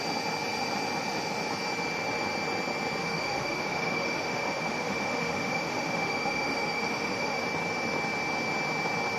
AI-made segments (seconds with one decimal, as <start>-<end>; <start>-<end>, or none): 3.0-7.4